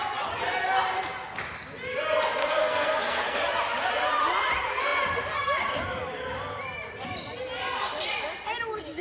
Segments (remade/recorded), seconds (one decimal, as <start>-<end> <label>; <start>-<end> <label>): 0.0-2.4 recorded; 2.4-3.4 remade; 3.4-9.0 recorded